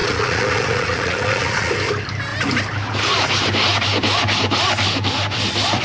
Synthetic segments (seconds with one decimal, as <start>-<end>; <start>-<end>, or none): 0.0-1.7